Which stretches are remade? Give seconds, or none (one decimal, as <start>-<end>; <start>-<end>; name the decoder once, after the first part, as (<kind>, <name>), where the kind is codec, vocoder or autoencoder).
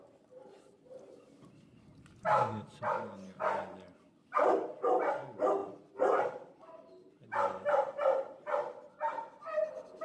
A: none